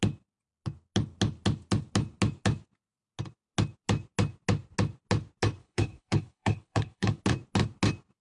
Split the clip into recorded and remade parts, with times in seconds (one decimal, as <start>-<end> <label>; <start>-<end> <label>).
0.0-5.6 recorded; 5.6-7.2 remade; 7.2-8.2 recorded